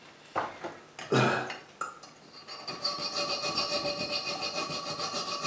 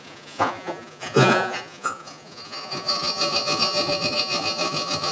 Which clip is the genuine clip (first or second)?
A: first